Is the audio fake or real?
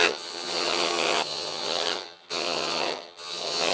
fake